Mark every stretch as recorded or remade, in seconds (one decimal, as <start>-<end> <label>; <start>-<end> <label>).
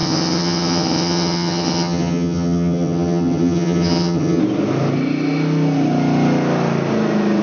0.0-4.4 remade; 4.4-7.4 recorded